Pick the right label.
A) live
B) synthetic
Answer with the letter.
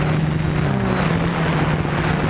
A